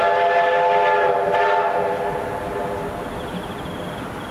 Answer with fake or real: real